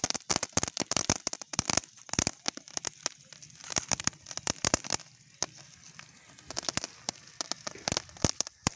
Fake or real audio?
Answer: fake